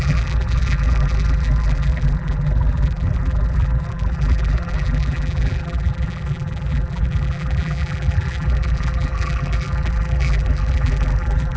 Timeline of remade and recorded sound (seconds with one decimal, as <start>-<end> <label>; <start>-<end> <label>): 0.0-11.6 remade

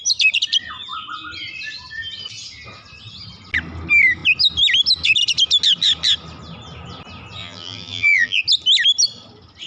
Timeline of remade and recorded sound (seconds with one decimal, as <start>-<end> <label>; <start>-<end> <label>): 0.0-7.4 recorded; 7.4-8.4 remade; 8.4-9.7 recorded

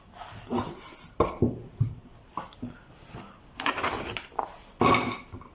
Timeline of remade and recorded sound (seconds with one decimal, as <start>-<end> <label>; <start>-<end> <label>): 0.0-0.5 recorded; 0.5-1.7 remade; 1.7-2.1 recorded; 2.1-5.5 remade